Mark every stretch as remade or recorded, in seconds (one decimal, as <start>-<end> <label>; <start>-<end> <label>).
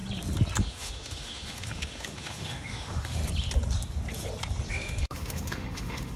0.0-0.6 recorded; 0.6-3.2 remade; 3.2-4.7 recorded; 4.7-6.2 remade